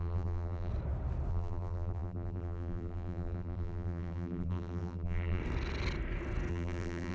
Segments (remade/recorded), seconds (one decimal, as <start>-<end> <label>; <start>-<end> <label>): 0.0-0.7 remade; 0.7-1.3 recorded; 1.3-5.4 remade; 5.4-6.5 recorded; 6.5-7.1 remade